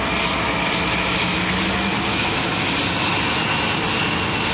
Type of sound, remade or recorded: recorded